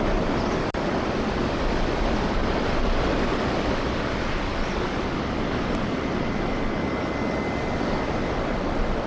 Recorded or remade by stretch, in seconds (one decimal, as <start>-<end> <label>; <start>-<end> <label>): 0.0-9.1 recorded